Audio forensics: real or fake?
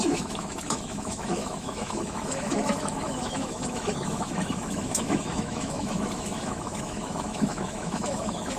fake